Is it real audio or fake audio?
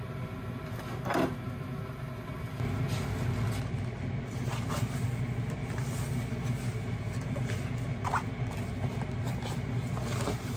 real